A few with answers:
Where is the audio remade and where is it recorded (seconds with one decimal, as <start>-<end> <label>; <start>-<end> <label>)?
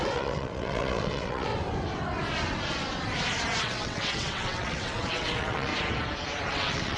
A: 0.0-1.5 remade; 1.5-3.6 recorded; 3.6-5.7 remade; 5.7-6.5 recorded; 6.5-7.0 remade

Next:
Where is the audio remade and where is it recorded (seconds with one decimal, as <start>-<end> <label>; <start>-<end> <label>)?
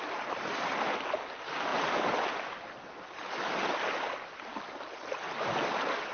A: 0.0-6.1 recorded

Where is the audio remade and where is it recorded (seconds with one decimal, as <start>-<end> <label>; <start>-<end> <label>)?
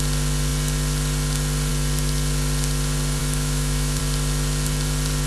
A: 0.0-3.2 recorded; 3.2-4.0 remade; 4.0-5.3 recorded